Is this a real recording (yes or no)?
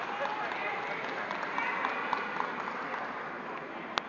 yes